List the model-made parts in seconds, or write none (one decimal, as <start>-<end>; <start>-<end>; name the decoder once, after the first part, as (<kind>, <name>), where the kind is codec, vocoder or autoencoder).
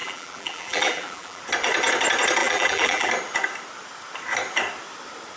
0.0-1.4 (vocoder, BigVGAN v2); 2.4-3.1